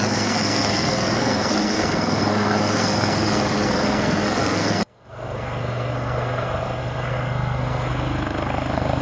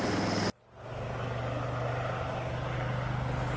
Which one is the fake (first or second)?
first